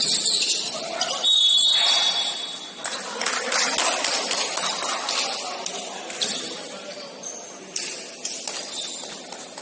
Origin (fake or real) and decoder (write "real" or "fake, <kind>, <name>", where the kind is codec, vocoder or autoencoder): real